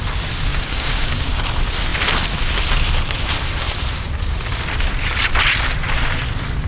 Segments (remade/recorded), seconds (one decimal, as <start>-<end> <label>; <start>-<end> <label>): 0.0-0.5 recorded; 0.5-1.4 remade; 1.4-6.7 recorded